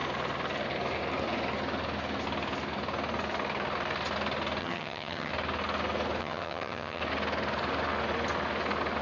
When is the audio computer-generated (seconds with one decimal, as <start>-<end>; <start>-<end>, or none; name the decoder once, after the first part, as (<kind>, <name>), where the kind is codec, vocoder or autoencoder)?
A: 4.6-5.3 (vocoder, HiFi-GAN); 6.2-7.0